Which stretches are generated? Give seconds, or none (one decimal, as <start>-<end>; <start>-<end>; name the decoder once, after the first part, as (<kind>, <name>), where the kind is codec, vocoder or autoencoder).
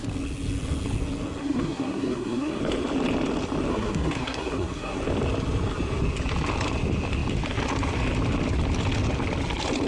1.4-2.6 (codec, SNAC); 3.7-5.0